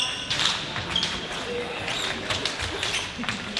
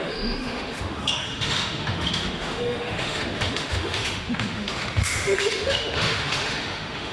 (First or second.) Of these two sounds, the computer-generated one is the second